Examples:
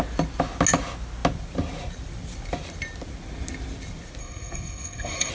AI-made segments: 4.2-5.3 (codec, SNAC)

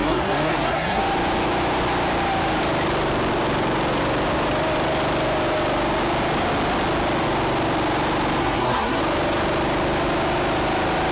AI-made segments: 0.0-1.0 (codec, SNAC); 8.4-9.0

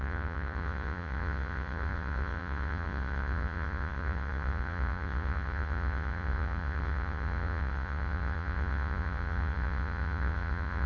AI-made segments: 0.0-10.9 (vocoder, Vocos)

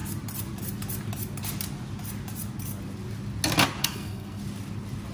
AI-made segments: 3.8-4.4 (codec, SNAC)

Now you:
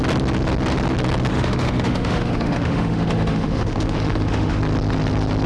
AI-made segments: 1.3-4.6 (autoencoder, DAC-VAE)